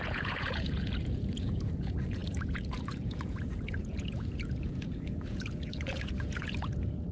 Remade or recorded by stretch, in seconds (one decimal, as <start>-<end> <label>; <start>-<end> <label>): 0.0-7.1 remade